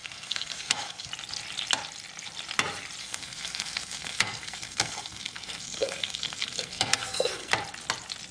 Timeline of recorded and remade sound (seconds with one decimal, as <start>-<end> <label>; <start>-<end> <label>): 0.0-1.1 remade; 1.1-3.0 recorded; 3.0-7.5 remade; 7.5-8.3 recorded